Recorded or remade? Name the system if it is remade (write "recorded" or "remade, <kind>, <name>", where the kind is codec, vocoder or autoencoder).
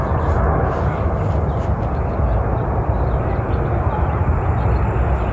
recorded